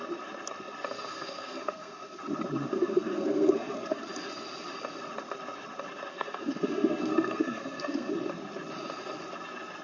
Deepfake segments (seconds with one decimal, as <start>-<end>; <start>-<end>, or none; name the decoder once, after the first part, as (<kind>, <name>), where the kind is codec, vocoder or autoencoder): 1.1-2.2 (codec, SNAC); 2.7-4.0; 6.1-8.1